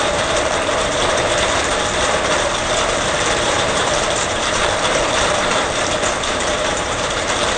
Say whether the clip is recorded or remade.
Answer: remade